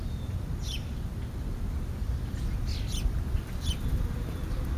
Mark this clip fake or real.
real